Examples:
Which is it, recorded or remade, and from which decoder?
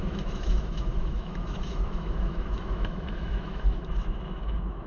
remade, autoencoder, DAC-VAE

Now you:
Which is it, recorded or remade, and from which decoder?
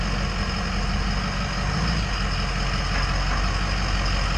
recorded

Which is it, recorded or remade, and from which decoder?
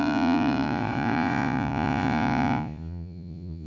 remade, vocoder, Vocos